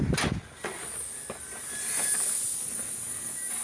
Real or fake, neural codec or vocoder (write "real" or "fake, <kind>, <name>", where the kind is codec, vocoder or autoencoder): real